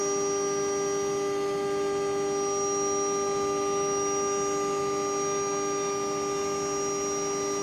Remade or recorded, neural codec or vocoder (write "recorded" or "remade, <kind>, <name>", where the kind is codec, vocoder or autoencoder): recorded